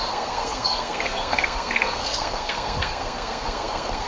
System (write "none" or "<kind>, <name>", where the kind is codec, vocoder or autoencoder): codec, SNAC